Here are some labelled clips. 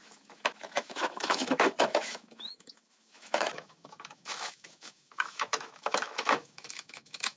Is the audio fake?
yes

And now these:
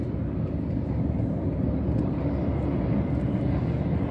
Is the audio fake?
no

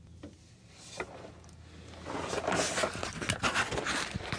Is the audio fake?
no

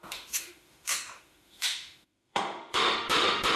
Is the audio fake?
yes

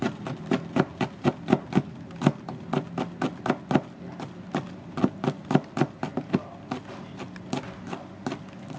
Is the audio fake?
no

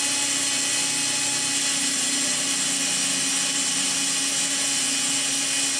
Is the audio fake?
no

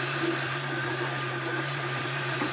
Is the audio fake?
yes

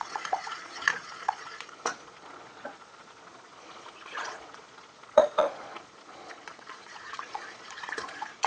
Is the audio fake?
yes